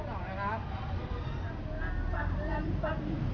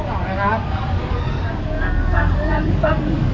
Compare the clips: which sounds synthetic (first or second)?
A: second